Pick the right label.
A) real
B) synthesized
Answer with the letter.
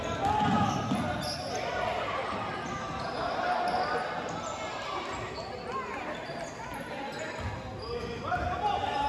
A